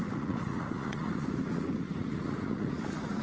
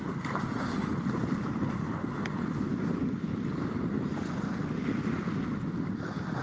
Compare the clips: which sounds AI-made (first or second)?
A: first